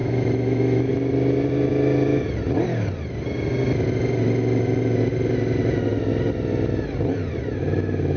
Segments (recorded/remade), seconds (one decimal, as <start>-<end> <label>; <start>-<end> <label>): 0.0-0.9 remade; 0.9-8.2 recorded